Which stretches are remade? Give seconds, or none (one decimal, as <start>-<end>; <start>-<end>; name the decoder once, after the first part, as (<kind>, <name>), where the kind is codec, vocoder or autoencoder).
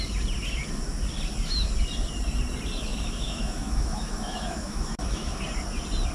2.9-5.4 (autoencoder, DAC-VAE)